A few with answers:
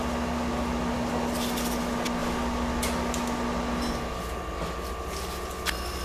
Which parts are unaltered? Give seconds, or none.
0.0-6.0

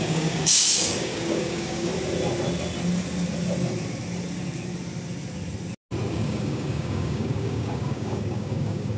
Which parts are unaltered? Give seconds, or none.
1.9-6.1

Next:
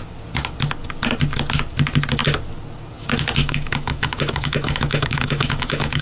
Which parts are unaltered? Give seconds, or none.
0.0-3.4

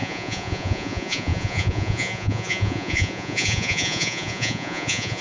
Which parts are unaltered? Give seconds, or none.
none

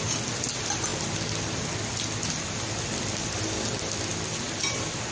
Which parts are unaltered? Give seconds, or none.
0.0-5.1